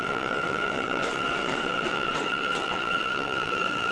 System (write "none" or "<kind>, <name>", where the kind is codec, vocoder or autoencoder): vocoder, WaveNeXt